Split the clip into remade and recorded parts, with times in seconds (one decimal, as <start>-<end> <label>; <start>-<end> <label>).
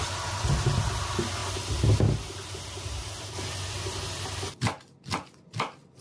0.0-6.0 recorded